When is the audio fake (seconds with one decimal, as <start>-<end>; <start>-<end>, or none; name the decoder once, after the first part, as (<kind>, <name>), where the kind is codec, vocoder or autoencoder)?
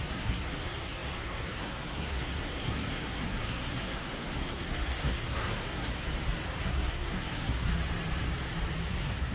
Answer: 0.0-5.9 (codec, SNAC); 6.6-7.7; 8.9-9.3